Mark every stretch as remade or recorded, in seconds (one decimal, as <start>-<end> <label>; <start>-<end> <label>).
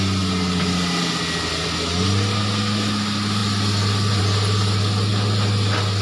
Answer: 0.0-6.0 recorded